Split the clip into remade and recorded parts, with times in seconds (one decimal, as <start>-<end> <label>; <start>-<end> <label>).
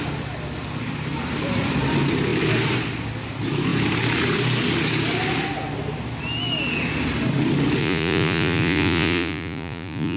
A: 0.0-7.8 recorded; 7.8-10.2 remade